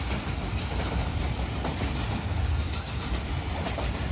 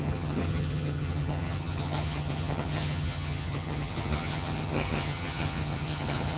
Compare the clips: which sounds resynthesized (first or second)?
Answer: second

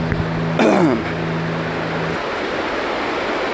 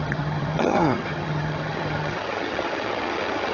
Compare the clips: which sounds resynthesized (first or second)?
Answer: second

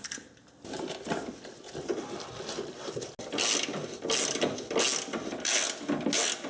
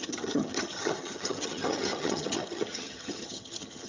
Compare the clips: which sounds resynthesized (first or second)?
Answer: second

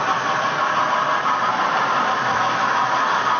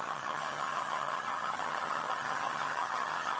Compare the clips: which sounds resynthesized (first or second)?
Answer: second